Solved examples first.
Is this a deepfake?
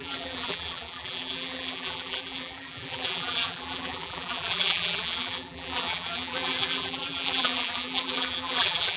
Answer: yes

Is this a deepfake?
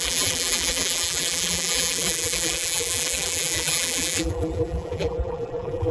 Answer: yes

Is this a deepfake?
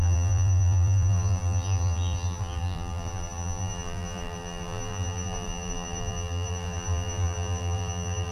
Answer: yes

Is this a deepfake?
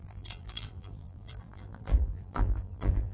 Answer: yes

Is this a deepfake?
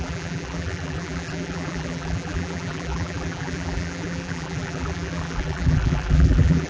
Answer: yes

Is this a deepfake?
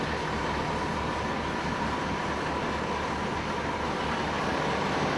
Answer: no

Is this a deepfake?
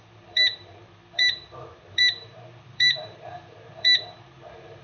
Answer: yes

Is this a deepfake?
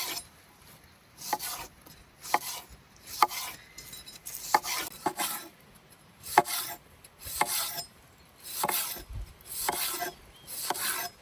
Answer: no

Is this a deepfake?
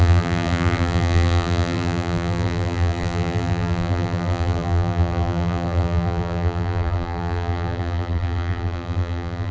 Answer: yes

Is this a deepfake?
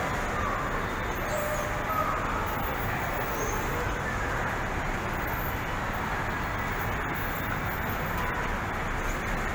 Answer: no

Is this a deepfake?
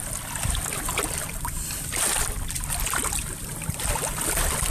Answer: no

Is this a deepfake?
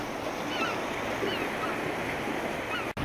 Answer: no